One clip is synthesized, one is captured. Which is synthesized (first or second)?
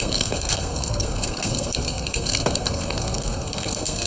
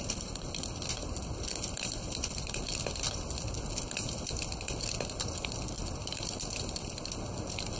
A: first